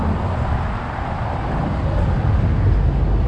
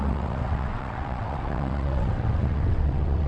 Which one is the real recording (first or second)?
first